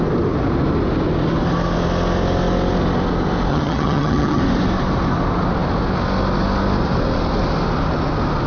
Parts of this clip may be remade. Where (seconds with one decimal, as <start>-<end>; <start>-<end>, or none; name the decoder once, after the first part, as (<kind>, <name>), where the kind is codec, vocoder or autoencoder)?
3.5-4.4 (vocoder, HiFi-GAN)

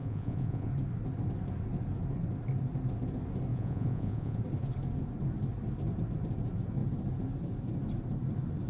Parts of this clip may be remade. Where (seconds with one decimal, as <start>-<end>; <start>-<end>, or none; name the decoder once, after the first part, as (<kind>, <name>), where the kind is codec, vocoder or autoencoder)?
0.0-0.7 (vocoder, Vocos); 3.5-4.4

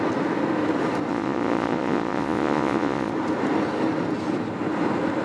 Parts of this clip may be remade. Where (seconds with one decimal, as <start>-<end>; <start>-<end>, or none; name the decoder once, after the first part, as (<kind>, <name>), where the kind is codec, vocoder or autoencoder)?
1.1-3.1 (vocoder, Vocos)

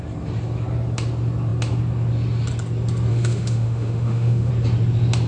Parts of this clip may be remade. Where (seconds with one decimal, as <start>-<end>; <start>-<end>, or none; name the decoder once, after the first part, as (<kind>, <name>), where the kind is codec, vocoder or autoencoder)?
3.1-4.5 (autoencoder, DAC-VAE)

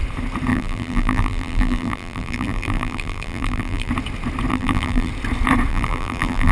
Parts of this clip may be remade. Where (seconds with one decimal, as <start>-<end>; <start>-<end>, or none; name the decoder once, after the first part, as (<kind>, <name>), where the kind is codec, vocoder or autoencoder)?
0.5-3.9 (vocoder, BigVGAN v2); 4.5-5.1; 5.7-6.5